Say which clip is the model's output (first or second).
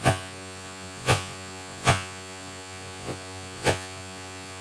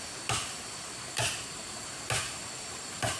first